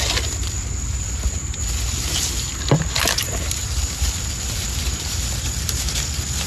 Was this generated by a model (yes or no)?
no